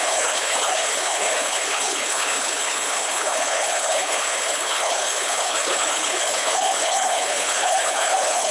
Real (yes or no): no